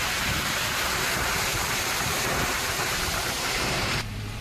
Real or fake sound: fake